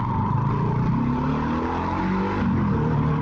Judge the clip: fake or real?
real